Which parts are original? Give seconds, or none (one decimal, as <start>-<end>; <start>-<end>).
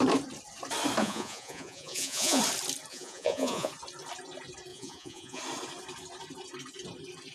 0.0-1.0; 2.4-2.9; 3.7-4.7; 5.4-7.3